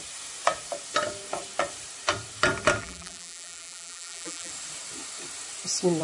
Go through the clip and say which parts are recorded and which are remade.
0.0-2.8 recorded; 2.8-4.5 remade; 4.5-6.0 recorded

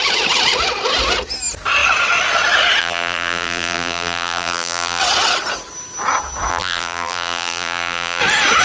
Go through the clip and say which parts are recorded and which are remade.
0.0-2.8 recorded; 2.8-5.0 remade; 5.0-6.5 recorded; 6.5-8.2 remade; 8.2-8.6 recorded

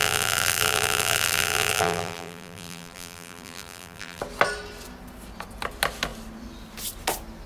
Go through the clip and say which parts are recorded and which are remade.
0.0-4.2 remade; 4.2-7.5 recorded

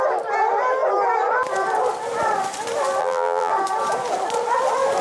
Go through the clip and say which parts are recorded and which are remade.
0.0-3.0 recorded; 3.0-3.5 remade; 3.5-5.0 recorded

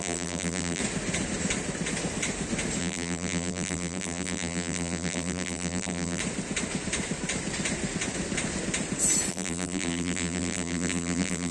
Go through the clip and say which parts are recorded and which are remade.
0.0-0.8 remade; 0.8-2.8 recorded; 2.8-6.2 remade; 6.2-9.3 recorded; 9.3-11.5 remade

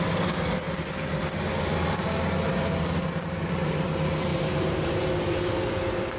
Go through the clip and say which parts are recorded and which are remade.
0.0-4.3 recorded; 4.3-5.1 remade; 5.1-6.2 recorded